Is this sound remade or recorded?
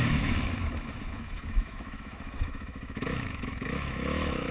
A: remade